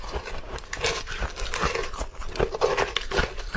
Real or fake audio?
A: real